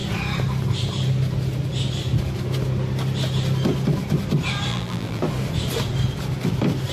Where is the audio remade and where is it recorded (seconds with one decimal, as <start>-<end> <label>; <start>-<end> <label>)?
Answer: 0.0-4.7 recorded; 4.7-5.2 remade; 5.2-6.9 recorded